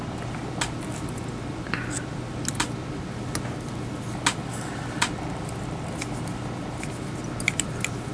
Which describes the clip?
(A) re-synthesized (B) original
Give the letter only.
B